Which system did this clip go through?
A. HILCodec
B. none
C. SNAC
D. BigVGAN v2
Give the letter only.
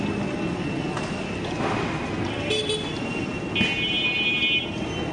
B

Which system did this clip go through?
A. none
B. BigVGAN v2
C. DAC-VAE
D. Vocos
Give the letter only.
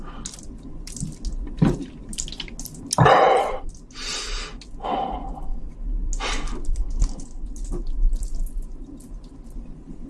A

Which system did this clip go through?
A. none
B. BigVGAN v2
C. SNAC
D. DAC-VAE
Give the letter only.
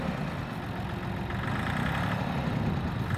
A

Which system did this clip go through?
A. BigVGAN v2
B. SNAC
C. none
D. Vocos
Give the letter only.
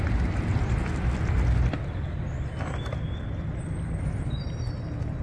A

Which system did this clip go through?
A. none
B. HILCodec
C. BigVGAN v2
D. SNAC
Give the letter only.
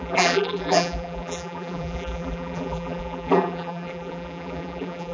C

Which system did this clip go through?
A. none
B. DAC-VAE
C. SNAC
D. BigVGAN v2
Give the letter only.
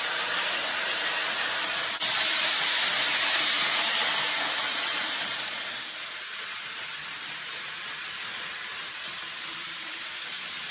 D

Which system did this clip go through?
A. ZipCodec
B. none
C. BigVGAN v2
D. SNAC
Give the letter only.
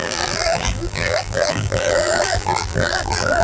C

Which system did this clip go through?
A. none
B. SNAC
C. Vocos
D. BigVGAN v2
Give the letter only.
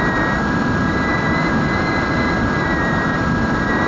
D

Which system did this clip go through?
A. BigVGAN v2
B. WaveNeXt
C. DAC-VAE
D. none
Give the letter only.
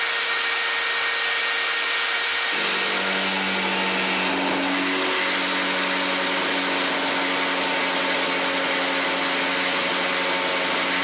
D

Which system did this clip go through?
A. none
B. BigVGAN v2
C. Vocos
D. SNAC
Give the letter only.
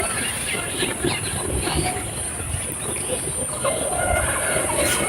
A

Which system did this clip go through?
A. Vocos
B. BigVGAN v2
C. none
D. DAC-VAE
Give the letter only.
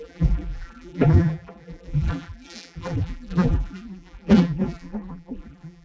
B